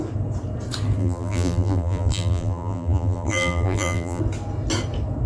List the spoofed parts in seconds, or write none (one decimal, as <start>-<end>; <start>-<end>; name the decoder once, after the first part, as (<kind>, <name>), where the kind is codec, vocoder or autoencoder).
1.0-4.2 (vocoder, BigVGAN v2)